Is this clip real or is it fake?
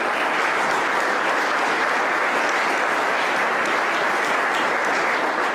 real